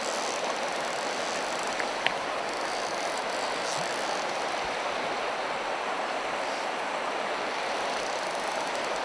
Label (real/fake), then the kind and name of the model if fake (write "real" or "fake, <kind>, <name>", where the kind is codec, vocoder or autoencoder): real